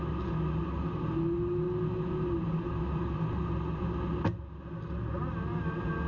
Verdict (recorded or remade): recorded